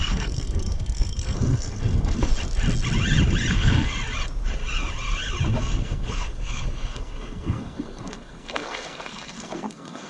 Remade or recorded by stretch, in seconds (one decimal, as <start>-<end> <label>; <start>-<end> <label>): 0.0-2.3 remade; 2.3-3.5 recorded; 3.5-3.9 remade; 3.9-5.6 recorded; 5.6-10.1 remade